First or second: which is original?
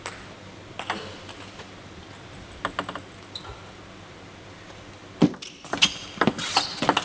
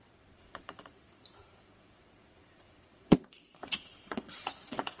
first